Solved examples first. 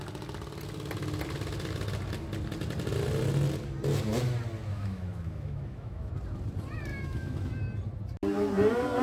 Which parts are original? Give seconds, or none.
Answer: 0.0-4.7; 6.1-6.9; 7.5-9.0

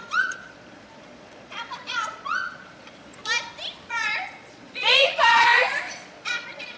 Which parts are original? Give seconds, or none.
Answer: 3.2-3.9

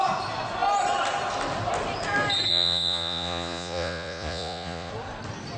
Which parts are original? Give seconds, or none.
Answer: 0.0-2.5; 4.9-5.6

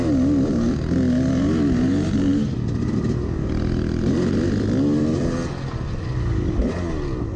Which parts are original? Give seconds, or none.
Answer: 0.0-7.4

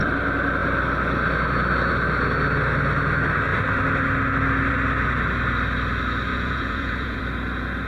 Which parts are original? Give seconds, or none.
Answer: 0.0-6.3; 7.2-7.9

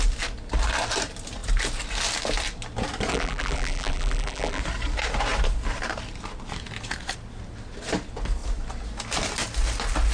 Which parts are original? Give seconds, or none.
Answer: 0.0-3.1; 4.6-10.1

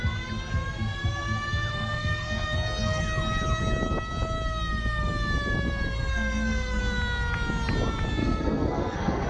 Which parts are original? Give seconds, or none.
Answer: 0.0-1.7; 3.0-6.1; 6.8-8.2

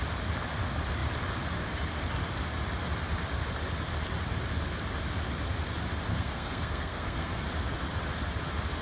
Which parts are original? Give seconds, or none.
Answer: 0.0-6.1; 7.4-8.8